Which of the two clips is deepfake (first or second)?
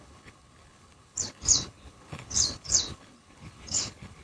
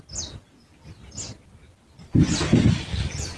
first